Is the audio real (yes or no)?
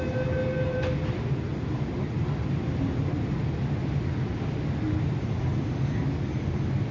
yes